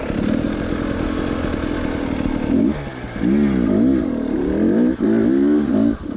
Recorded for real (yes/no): yes